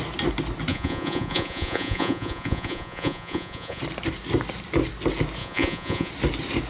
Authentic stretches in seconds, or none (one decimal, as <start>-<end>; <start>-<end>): 0.0-0.7; 3.8-5.4; 6.1-6.7